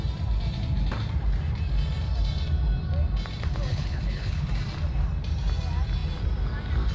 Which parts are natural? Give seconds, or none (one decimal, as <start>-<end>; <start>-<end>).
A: 0.0-3.7; 4.5-6.9